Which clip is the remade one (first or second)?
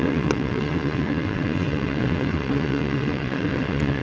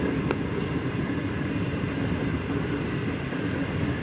first